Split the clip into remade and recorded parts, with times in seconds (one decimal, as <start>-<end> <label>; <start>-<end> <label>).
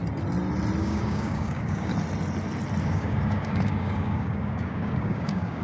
0.0-0.8 recorded; 0.8-1.9 remade; 1.9-2.8 recorded; 2.8-5.6 remade